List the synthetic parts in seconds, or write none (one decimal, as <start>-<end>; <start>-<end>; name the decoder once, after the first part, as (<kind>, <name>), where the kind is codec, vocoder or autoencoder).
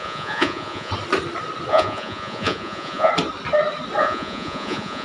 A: 0.0-0.9 (vocoder, Vocos); 1.7-3.1; 4.0-5.0